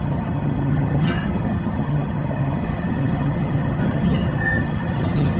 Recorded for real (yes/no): no